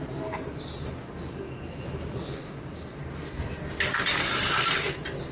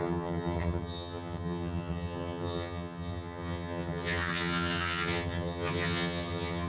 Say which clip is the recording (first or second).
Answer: first